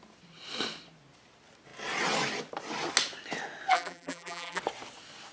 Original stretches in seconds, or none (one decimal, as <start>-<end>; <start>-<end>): 0.0-3.7; 4.6-5.3